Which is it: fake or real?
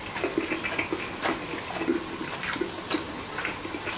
real